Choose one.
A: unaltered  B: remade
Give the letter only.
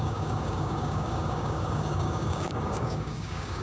B